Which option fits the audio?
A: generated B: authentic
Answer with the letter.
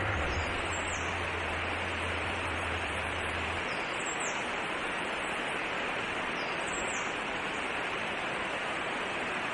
A